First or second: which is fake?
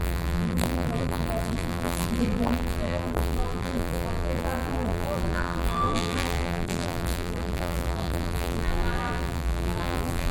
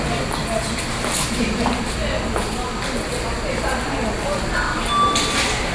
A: first